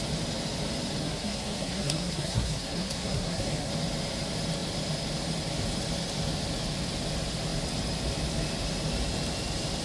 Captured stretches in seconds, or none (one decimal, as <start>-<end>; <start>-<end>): 0.0-1.0; 3.7-9.8